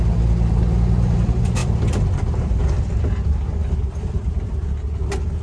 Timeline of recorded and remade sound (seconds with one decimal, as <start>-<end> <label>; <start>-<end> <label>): 0.0-1.6 recorded; 1.6-2.6 remade; 2.6-3.6 recorded; 3.6-4.2 remade; 4.2-5.4 recorded